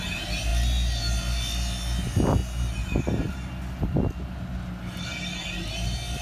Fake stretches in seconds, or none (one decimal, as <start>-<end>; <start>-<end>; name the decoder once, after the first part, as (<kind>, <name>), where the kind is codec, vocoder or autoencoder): none